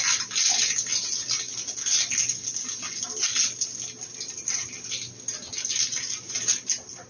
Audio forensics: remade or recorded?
recorded